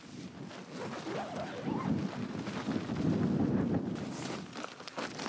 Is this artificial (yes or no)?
no